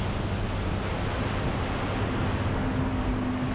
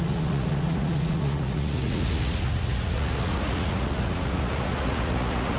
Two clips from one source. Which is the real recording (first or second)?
first